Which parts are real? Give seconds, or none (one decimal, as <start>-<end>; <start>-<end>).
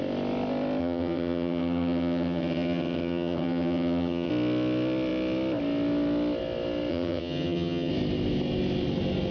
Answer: 0.0-0.8; 4.3-6.9; 7.9-9.3